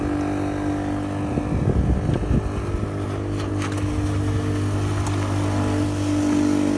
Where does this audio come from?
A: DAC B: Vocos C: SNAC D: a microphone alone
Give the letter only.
D